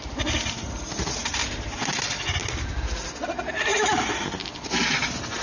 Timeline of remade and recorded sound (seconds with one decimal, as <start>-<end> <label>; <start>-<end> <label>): 0.0-5.4 recorded